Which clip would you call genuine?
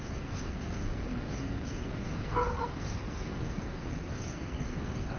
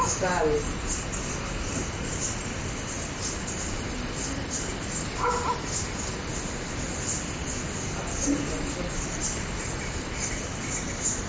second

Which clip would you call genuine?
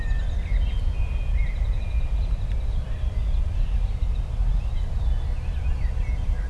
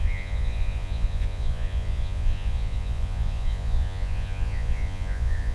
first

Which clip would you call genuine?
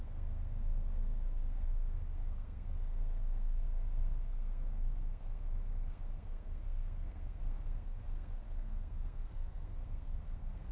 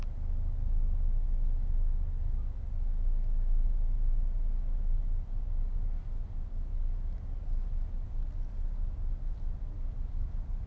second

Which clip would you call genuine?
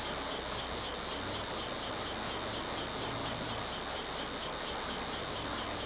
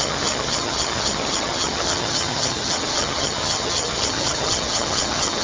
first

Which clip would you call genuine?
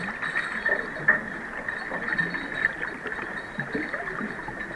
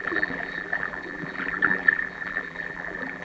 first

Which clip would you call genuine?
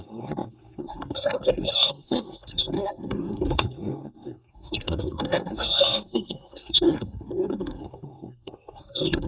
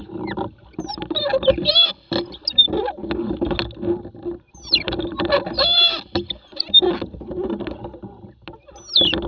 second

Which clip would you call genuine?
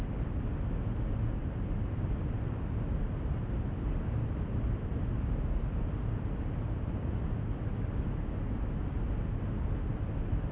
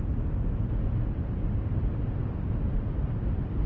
first